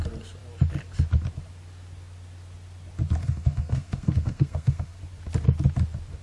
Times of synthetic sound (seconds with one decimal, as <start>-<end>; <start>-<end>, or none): 3.2-5.0